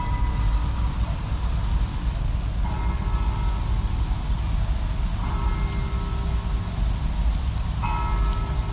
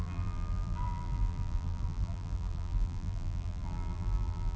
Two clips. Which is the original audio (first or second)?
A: first